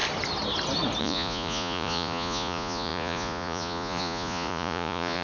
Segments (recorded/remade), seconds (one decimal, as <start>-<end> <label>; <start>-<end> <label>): 0.0-1.0 recorded; 1.0-5.2 remade